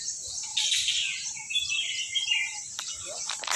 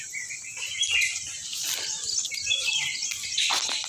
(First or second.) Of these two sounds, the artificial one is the first